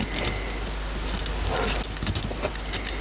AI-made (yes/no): no